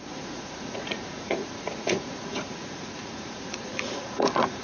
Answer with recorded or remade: remade